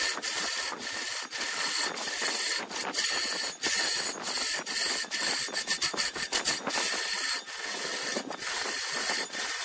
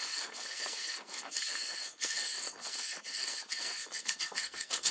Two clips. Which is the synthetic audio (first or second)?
second